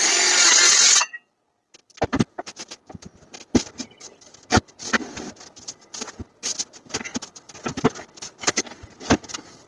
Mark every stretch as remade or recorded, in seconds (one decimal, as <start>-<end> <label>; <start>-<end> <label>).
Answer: 0.0-9.7 recorded